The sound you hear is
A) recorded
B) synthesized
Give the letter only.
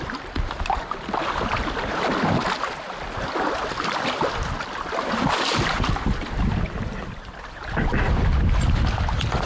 A